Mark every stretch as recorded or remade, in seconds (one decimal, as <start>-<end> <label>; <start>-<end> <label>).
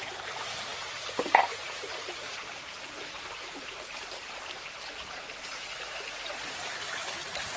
0.0-5.5 remade; 5.5-7.6 recorded